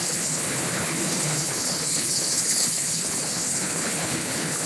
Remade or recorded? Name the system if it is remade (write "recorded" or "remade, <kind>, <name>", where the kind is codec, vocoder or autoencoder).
remade, codec, HILCodec